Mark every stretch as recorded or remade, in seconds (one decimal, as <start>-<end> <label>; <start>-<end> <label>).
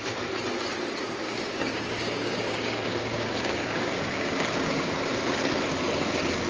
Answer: 0.0-1.2 recorded; 1.2-5.1 remade; 5.1-6.5 recorded